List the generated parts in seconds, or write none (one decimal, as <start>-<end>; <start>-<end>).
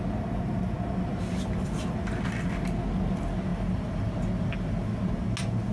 none